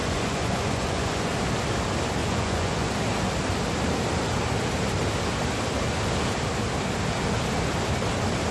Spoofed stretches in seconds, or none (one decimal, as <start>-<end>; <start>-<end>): 0.0-1.3; 2.2-2.9